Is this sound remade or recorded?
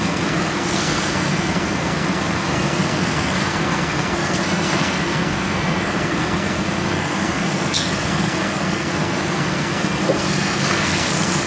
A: remade